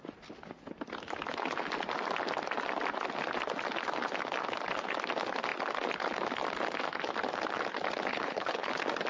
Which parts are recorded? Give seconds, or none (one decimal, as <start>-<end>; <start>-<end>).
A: 0.0-8.1; 8.7-9.1